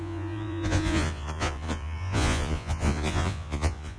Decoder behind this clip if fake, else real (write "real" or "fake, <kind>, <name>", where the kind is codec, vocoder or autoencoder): fake, vocoder, Vocos